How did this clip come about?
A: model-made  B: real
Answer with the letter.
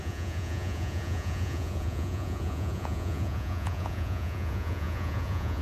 A